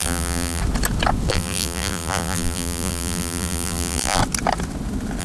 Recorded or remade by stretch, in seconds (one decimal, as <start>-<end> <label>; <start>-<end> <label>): 0.0-0.6 remade; 0.6-1.3 recorded; 1.3-4.2 remade; 4.2-5.2 recorded